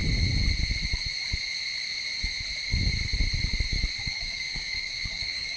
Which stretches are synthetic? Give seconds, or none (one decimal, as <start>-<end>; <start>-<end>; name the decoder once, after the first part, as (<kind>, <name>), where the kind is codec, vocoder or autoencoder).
4.0-5.6 (codec, DAC)